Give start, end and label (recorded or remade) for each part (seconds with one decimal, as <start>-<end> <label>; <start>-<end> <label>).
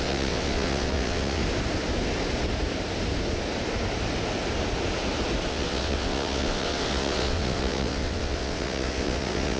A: 0.0-1.4 remade; 1.4-5.5 recorded; 5.5-9.6 remade